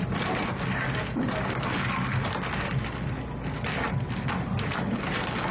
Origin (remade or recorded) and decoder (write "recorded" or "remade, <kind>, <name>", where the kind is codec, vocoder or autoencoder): recorded